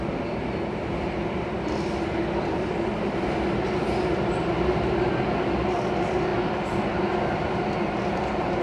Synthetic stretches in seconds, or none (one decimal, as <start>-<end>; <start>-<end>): none